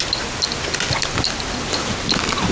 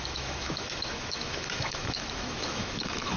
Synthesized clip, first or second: second